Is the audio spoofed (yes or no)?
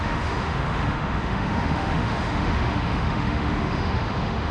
yes